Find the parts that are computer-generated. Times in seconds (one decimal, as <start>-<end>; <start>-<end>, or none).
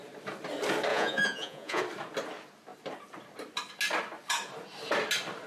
0.9-1.8